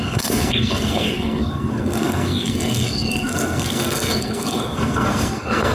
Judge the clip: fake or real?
fake